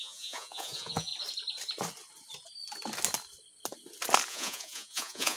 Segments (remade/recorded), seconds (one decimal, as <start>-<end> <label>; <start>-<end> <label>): 0.0-1.1 remade; 1.1-4.3 recorded; 4.3-5.4 remade